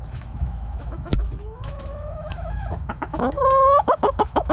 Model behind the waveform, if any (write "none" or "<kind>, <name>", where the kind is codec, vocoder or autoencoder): autoencoder, DAC-VAE